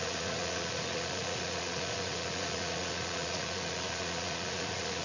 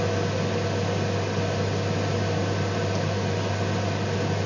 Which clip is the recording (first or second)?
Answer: second